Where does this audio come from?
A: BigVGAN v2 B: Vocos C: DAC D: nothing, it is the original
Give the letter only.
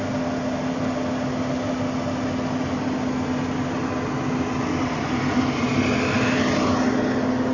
D